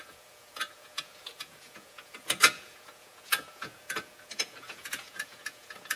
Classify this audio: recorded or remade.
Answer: remade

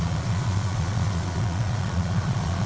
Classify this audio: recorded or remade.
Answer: remade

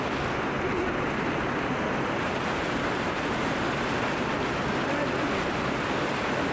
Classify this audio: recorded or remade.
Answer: recorded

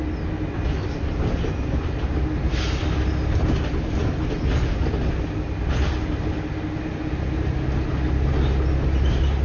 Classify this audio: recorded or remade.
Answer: recorded